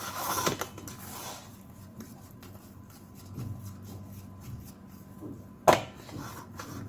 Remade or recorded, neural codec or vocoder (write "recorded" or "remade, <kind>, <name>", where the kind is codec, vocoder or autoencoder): recorded